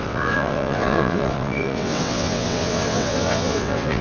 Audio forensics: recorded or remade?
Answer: remade